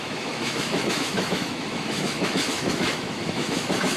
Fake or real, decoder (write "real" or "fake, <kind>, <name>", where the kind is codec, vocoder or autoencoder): fake, autoencoder, DAC-VAE